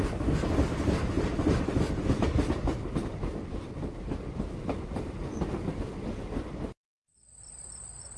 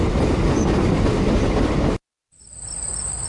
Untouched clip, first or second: second